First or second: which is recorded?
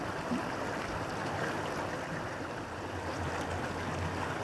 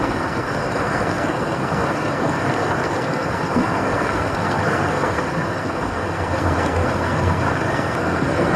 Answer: first